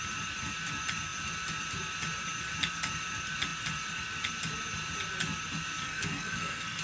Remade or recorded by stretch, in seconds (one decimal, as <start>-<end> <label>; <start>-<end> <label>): 0.0-5.8 recorded; 5.8-6.8 remade